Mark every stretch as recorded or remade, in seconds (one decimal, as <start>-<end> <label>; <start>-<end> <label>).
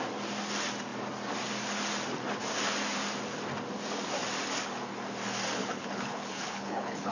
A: 0.0-5.6 recorded; 5.6-7.1 remade